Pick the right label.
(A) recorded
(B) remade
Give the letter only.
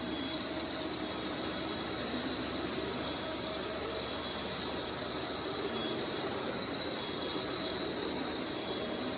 B